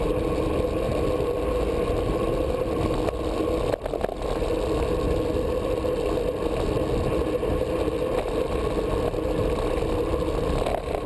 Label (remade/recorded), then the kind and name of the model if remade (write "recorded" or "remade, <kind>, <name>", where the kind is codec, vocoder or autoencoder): recorded